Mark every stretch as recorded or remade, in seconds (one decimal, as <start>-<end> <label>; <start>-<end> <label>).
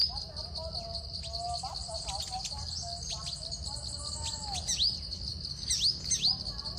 0.0-6.8 recorded